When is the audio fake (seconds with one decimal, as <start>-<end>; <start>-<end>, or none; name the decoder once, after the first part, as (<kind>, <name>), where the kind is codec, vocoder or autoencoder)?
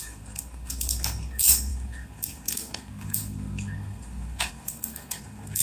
0.0-5.6 (codec, SNAC)